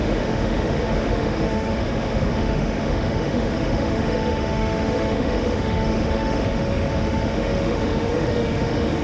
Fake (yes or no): yes